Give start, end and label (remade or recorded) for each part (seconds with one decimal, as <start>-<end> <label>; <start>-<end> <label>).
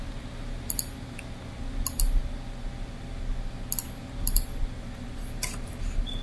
0.0-6.2 recorded